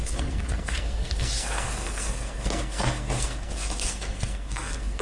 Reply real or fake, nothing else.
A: fake